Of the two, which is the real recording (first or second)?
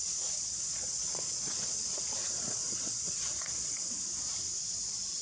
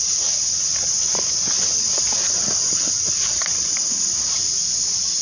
second